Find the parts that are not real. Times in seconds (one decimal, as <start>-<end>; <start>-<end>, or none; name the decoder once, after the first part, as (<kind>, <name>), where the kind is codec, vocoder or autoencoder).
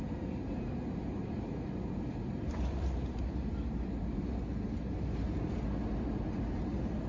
1.2-5.5 (vocoder, BigVGAN v2)